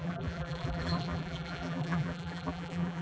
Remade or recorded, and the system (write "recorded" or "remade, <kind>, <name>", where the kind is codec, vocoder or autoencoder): remade, vocoder, BigVGAN v2